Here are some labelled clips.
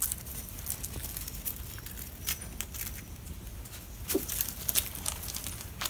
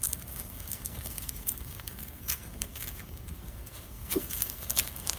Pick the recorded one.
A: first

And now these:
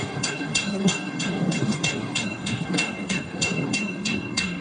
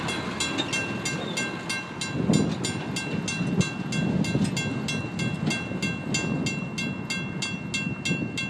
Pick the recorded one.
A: second